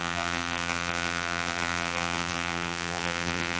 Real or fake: fake